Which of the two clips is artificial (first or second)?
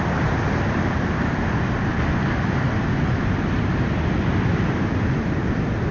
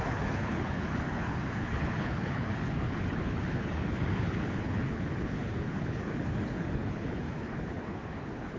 second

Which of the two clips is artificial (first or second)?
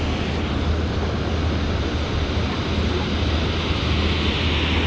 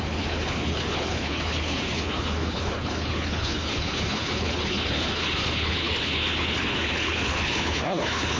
second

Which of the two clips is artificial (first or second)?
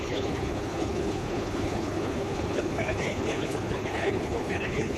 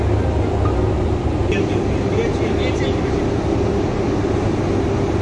first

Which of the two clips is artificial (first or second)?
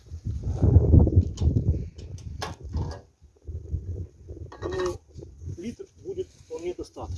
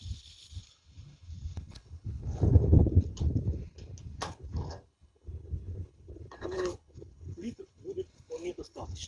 second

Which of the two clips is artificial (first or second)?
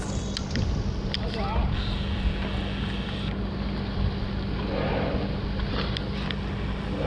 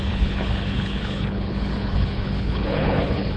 second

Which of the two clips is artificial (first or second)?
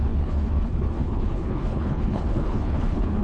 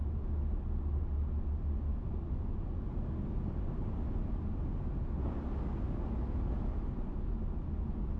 first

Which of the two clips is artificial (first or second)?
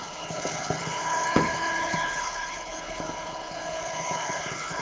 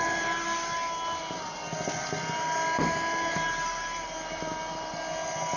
first